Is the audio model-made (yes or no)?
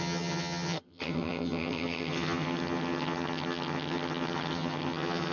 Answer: yes